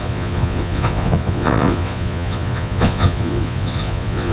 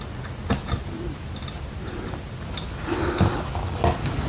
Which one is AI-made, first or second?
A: first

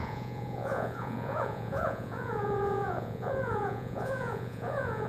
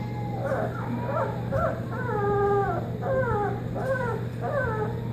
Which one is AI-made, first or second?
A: first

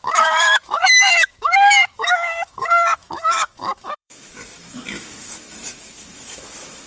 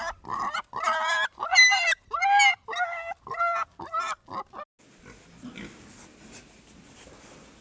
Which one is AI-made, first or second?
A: first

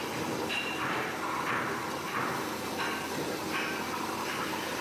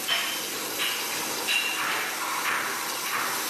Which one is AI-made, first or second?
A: first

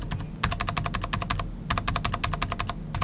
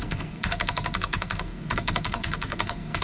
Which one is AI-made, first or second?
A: second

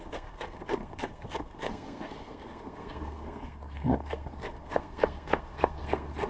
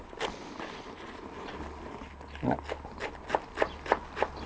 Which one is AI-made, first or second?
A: first